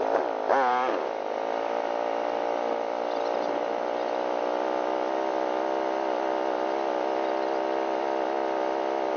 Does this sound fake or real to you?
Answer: real